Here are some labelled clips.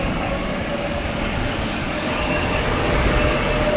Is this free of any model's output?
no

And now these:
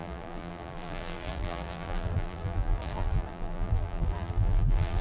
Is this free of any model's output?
no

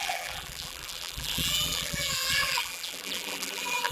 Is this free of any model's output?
no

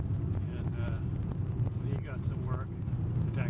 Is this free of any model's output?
yes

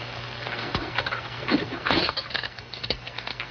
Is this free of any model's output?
no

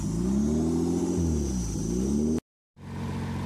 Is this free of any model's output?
yes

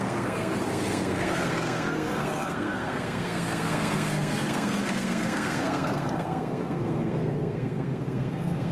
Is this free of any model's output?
no